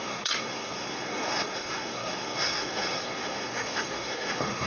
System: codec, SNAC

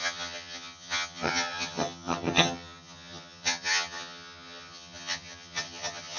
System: vocoder, HiFi-GAN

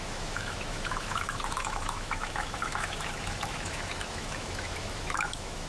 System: autoencoder, DAC-VAE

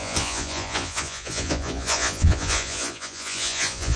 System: vocoder, Vocos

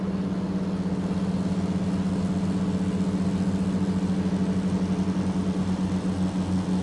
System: none